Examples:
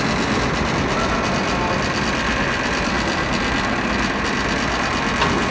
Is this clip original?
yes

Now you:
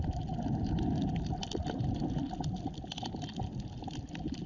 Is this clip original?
yes